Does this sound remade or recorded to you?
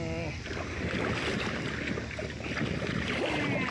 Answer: recorded